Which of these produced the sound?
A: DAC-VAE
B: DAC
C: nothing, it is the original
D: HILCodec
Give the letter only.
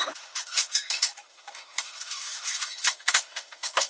A